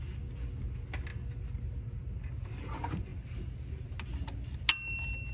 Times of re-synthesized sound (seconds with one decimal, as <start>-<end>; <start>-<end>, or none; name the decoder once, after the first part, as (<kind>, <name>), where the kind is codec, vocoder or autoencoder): none